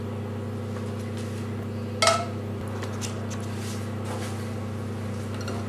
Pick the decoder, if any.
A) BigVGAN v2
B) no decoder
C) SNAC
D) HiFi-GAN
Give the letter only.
B